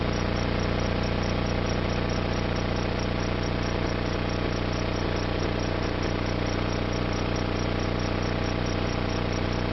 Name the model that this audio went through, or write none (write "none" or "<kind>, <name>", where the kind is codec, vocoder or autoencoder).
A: none